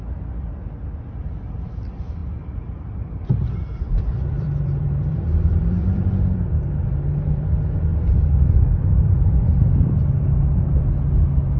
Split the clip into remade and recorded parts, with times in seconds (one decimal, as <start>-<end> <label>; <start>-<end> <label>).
0.0-2.2 recorded; 2.2-6.7 remade; 6.7-7.9 recorded; 7.9-10.8 remade; 10.8-11.6 recorded